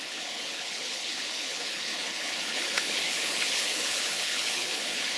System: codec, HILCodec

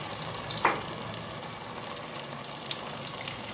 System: none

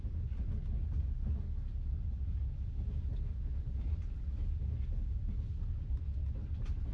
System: none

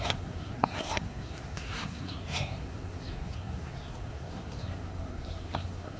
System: codec, SNAC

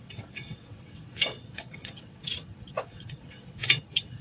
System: vocoder, WaveNeXt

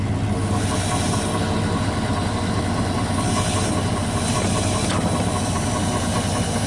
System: none